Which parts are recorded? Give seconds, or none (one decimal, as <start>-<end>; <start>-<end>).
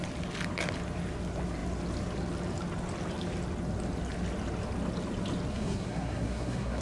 0.0-5.5